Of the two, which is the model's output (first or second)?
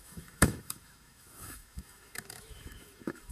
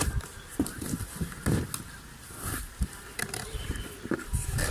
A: first